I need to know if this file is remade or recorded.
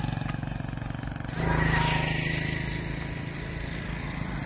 recorded